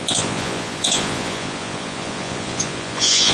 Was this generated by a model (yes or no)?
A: yes